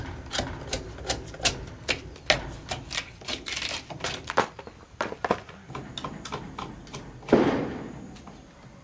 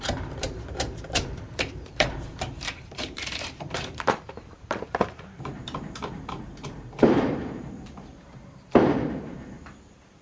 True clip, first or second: first